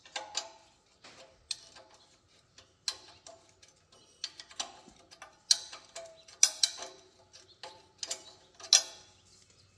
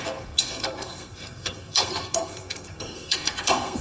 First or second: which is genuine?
first